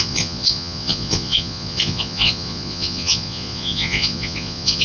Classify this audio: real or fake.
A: fake